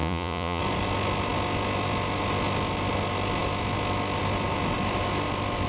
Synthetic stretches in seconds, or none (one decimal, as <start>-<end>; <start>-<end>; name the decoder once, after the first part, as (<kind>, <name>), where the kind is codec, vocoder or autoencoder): 0.0-0.6 (vocoder, Vocos)